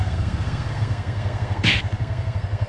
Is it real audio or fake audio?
fake